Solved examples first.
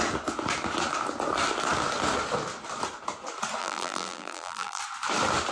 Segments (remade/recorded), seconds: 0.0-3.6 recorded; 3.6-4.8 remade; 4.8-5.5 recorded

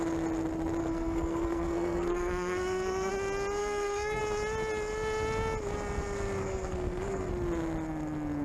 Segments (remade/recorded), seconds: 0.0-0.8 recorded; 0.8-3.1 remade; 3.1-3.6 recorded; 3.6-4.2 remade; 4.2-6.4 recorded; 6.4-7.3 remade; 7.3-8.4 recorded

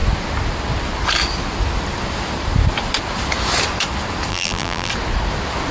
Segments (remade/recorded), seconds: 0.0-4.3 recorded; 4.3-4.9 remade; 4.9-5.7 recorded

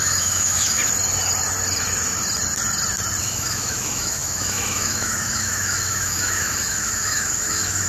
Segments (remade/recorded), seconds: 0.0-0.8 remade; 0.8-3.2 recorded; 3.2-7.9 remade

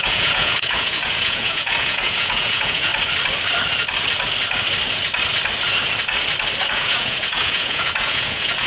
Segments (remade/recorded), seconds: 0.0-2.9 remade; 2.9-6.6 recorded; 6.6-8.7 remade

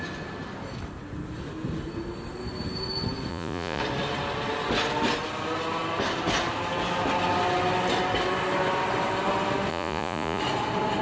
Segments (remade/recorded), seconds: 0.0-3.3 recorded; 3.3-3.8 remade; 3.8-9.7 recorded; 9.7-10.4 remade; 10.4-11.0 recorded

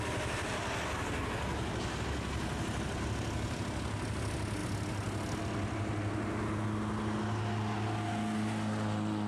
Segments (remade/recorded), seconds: 0.0-9.3 recorded